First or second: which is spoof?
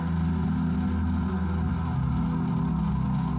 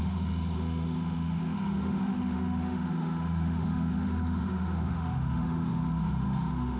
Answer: second